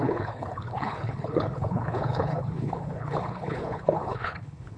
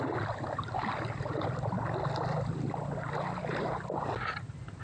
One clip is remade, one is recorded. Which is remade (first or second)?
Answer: first